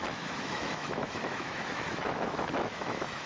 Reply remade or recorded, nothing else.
remade